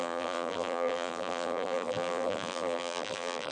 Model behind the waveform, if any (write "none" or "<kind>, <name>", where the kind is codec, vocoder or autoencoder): vocoder, BigVGAN v2